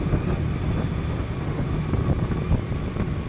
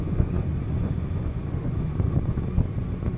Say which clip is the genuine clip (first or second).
first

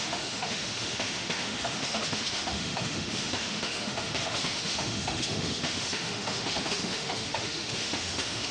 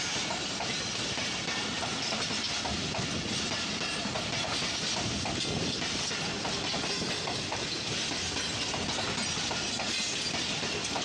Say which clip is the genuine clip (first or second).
second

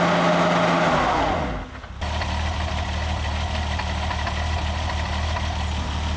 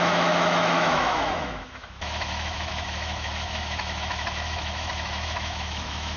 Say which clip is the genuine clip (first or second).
first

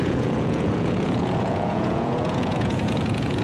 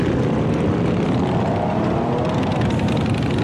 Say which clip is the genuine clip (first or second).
second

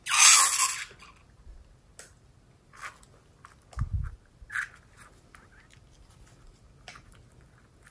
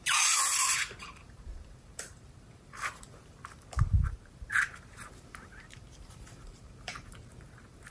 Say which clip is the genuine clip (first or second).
first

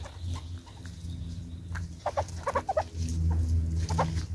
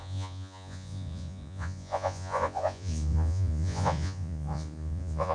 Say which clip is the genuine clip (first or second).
first